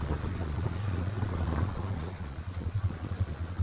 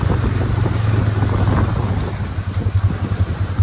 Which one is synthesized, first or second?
first